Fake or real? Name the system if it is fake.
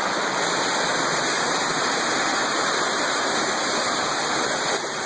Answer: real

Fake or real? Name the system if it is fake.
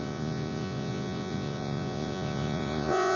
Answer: fake, vocoder, Vocos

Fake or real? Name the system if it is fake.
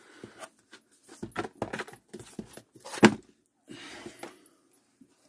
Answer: real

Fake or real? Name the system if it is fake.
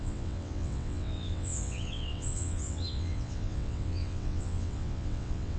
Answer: fake, vocoder, WaveNeXt